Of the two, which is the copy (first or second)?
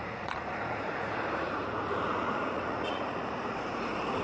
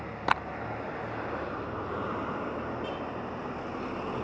first